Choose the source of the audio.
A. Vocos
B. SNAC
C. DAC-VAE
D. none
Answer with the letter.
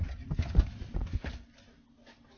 D